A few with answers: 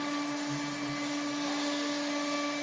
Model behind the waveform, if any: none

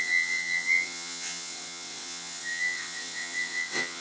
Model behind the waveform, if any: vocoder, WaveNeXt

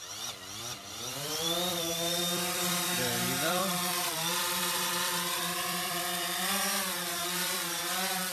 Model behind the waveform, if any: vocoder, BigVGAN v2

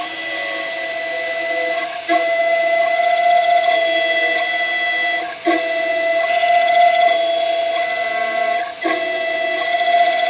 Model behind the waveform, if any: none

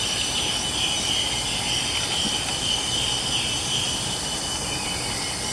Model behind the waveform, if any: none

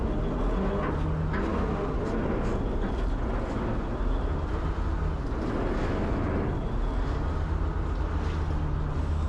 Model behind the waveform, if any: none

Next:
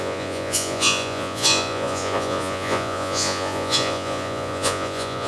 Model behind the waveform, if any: vocoder, Vocos